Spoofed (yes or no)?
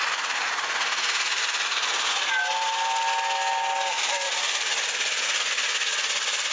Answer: no